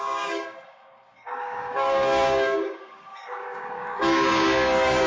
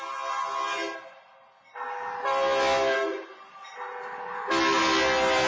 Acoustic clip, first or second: second